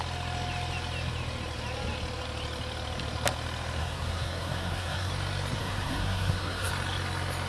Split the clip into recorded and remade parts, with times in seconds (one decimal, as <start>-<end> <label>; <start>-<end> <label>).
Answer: 0.0-3.8 recorded; 3.8-5.1 remade; 5.1-5.6 recorded; 5.6-6.7 remade; 6.7-7.5 recorded